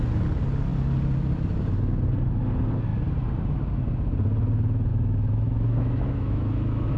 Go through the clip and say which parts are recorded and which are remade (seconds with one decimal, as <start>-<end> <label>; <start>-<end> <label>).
0.0-4.9 recorded; 4.9-7.0 remade